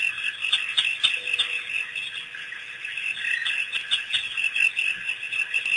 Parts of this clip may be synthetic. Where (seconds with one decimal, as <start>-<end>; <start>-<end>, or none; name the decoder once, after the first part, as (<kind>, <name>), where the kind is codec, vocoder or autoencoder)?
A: none